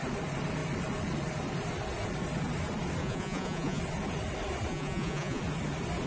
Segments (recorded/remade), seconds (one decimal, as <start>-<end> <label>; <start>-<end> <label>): 0.0-3.0 recorded; 3.0-3.8 remade; 3.8-4.7 recorded; 4.7-5.4 remade; 5.4-6.1 recorded

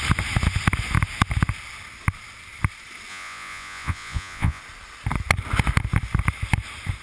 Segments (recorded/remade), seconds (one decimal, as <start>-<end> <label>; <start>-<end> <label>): 0.0-3.1 recorded; 3.1-4.6 remade; 4.6-7.0 recorded

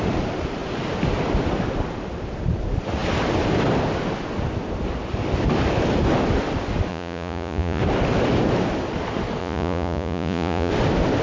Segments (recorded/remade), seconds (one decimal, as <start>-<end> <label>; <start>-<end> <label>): 0.0-6.9 recorded; 6.9-7.8 remade; 7.8-9.4 recorded; 9.4-10.7 remade; 10.7-11.2 recorded

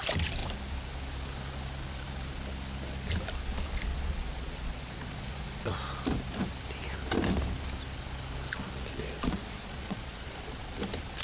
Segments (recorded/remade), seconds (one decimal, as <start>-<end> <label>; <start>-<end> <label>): 0.0-3.9 recorded; 3.9-5.7 remade; 5.7-9.0 recorded; 9.0-10.5 remade; 10.5-11.2 recorded

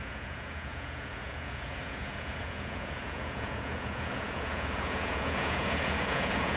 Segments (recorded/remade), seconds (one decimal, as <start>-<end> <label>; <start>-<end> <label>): 0.0-6.6 remade

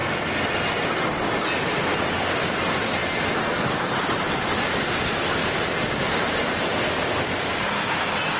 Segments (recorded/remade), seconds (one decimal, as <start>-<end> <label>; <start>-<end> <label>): 0.0-8.4 recorded

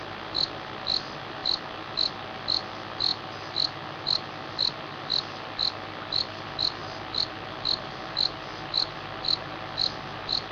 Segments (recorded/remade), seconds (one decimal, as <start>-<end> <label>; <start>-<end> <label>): 0.0-10.5 recorded